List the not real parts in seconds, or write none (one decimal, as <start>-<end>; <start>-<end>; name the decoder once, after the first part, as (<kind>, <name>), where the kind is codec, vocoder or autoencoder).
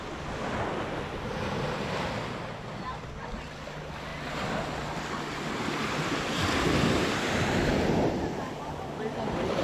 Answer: none